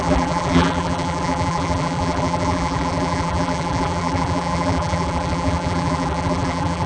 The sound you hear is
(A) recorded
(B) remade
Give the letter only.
B